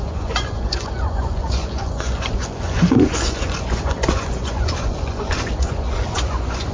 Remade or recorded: remade